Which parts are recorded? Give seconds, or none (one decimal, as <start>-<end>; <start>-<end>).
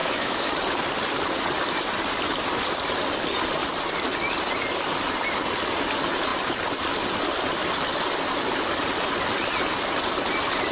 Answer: 0.5-10.7